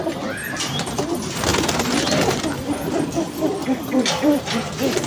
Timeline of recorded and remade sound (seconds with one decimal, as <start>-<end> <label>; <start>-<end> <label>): 0.0-3.6 recorded; 3.6-4.5 remade; 4.5-5.1 recorded